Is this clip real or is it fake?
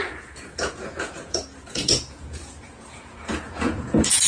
fake